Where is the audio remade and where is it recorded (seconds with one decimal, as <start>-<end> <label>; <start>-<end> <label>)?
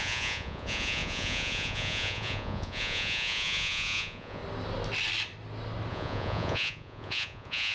0.0-4.4 remade; 4.4-5.9 recorded; 5.9-7.7 remade